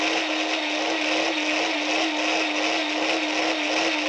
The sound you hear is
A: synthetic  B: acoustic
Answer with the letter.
B